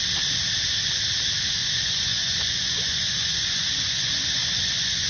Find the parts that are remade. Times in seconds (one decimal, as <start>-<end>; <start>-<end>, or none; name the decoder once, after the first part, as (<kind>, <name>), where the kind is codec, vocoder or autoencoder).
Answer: 1.6-5.1 (vocoder, Vocos)